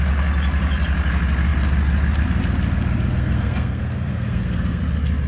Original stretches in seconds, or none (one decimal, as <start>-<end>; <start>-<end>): 0.0-3.1; 4.8-5.3